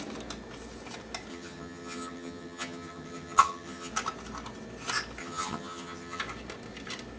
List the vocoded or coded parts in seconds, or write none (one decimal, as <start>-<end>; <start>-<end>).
1.3-3.9; 5.2-6.2